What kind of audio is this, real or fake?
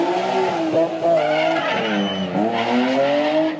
real